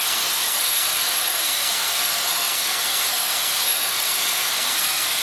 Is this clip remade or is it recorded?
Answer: remade